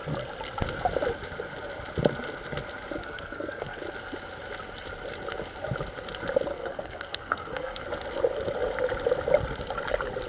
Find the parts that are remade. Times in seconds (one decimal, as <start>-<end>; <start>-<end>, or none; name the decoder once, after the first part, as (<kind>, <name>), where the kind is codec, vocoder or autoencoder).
3.0-3.8 (codec, SNAC); 6.5-7.8